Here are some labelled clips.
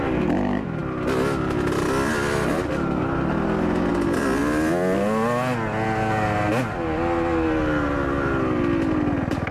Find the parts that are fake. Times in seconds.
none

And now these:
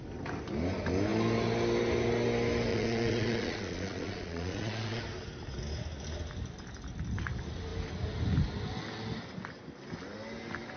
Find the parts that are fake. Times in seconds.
2.7-5.0 (vocoder, Vocos)